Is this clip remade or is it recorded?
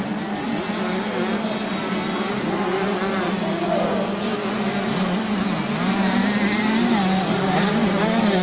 recorded